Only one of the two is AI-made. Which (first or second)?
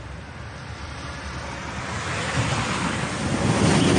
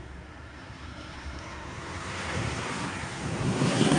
second